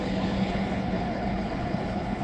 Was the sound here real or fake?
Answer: fake